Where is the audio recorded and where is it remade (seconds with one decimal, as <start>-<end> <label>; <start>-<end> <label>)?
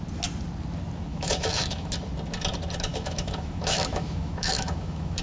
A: 0.0-1.1 recorded; 1.1-1.9 remade; 1.9-2.9 recorded; 2.9-5.2 remade